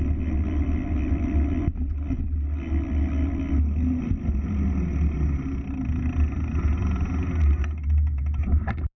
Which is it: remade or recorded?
recorded